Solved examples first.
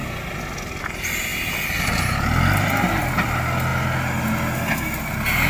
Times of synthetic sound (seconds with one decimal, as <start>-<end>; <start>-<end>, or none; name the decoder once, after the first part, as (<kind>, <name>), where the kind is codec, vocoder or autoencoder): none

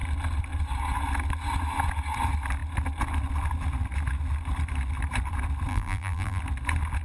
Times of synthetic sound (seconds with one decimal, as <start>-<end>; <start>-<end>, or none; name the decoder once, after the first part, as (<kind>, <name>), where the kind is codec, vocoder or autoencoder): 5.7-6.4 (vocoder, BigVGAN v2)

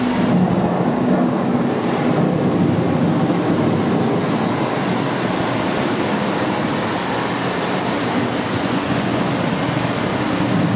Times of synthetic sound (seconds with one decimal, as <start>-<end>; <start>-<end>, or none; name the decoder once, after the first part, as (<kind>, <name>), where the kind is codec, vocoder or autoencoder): 8.5-9.3 (vocoder, Vocos)

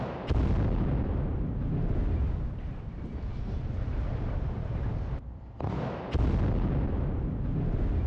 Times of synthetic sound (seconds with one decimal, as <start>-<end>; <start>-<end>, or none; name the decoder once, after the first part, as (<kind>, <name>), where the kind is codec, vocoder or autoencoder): 2.2-6.3 (vocoder, BigVGAN v2)